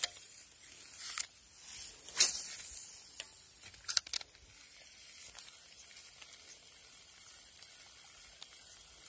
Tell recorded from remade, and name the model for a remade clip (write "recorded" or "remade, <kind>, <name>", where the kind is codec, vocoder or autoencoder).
recorded